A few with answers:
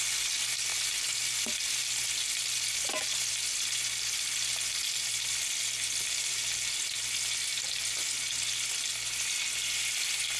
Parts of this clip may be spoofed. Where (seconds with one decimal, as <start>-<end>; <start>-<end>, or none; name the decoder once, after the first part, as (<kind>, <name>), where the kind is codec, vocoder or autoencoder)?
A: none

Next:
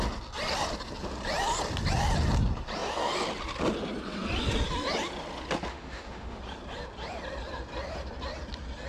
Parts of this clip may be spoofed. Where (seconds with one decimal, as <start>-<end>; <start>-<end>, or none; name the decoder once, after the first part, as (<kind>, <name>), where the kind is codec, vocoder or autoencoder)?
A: 5.7-6.4 (autoencoder, DAC-VAE)

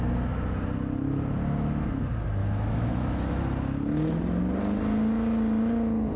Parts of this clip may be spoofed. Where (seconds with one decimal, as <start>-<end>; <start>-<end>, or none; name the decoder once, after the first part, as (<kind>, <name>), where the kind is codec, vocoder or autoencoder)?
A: 2.4-3.4 (autoencoder, DAC-VAE)

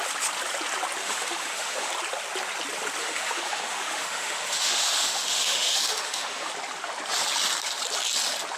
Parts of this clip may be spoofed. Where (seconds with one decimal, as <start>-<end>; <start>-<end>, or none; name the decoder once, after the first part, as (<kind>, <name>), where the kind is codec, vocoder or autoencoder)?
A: 1.0-1.9 (autoencoder, DAC-VAE); 3.0-6.5

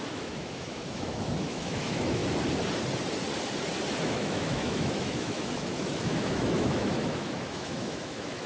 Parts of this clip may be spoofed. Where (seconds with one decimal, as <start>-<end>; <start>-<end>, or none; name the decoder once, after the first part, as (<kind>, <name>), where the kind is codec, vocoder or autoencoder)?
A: 0.0-2.2 (autoencoder, DAC-VAE); 4.0-8.5

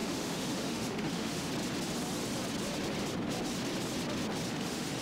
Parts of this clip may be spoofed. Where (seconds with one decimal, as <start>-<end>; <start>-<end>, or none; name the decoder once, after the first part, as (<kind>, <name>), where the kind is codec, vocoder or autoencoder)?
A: 0.0-1.5 (autoencoder, DAC-VAE); 4.5-5.0

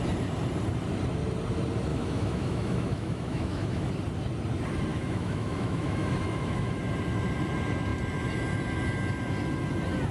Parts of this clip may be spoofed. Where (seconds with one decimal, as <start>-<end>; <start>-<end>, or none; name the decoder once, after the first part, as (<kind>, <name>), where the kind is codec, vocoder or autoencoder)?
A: 1.9-3.9 (autoencoder, DAC-VAE); 4.9-6.8

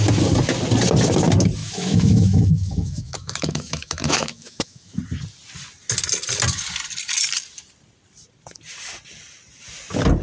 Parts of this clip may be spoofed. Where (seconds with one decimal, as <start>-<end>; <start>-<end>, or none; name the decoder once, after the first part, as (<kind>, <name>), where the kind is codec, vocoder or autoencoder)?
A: 1.6-5.0 (autoencoder, DAC-VAE)